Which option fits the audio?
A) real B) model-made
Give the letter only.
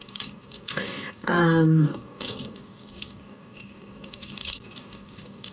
B